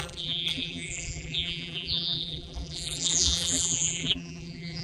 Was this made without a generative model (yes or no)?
no